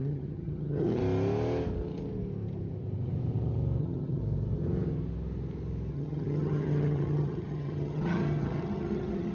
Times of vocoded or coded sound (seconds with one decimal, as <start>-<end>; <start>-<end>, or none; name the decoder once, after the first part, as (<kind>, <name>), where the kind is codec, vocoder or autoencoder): 0.0-1.0 (vocoder, HiFi-GAN); 3.8-4.2; 5.9-9.3